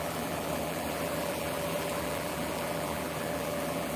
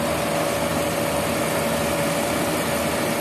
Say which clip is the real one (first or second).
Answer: second